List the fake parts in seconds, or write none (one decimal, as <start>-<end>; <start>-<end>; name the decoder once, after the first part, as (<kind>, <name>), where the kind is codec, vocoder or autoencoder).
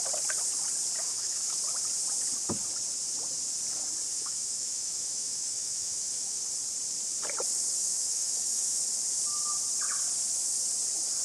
1.0-1.6 (autoencoder, DAC-VAE); 4.1-6.4; 7.8-8.8